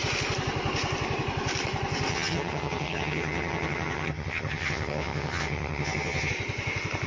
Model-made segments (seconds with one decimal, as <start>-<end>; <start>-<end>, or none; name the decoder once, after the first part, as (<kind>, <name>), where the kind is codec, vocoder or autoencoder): 2.1-6.3 (vocoder, HiFi-GAN)